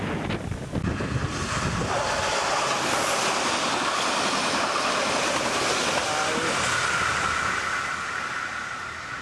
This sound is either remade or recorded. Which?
recorded